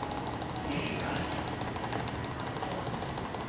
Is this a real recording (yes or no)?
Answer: yes